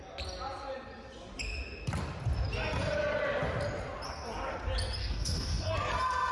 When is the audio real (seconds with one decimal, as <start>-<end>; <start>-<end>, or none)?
0.0-5.0; 5.7-6.3

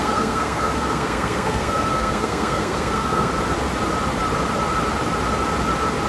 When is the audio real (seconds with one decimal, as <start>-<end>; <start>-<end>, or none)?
3.3-6.1

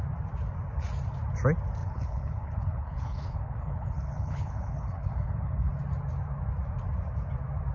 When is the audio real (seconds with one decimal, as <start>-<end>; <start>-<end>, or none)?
0.0-1.8; 5.7-7.7

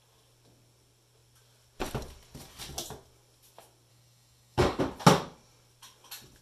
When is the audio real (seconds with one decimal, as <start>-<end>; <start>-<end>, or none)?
0.0-3.9; 4.8-6.4

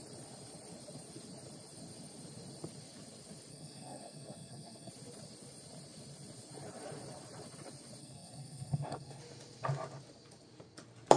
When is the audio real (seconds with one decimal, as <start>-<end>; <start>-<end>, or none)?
0.0-3.5; 4.9-8.0; 9.2-11.2

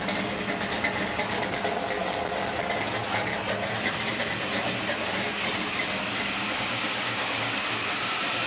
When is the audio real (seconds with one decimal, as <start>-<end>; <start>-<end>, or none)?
0.0-6.4; 7.7-8.5

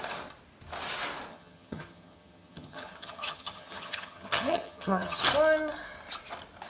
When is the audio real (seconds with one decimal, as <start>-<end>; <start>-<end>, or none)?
0.0-1.3; 5.2-6.7